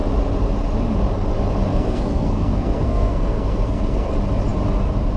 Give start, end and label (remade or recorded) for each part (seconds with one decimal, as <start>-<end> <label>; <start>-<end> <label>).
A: 0.0-1.7 recorded; 1.7-4.1 remade; 4.1-5.2 recorded